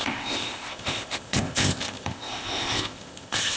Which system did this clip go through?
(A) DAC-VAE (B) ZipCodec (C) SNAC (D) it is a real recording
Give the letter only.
B